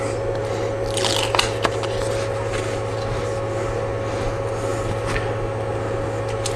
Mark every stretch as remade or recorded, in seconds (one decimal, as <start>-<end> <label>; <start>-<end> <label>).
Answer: 0.0-6.6 recorded